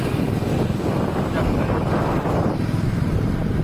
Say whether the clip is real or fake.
real